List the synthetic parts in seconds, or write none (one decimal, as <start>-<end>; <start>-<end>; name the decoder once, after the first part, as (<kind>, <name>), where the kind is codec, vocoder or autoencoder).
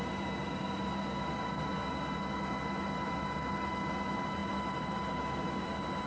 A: none